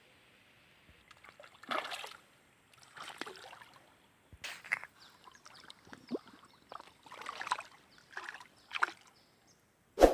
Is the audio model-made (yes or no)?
no